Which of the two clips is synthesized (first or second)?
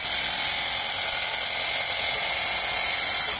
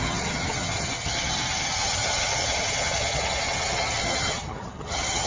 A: second